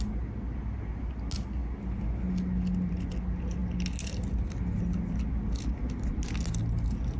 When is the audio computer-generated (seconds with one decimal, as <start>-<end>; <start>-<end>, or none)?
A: none